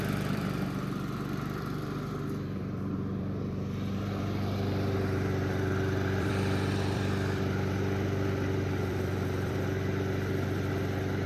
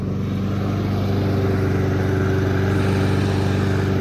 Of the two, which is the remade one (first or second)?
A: first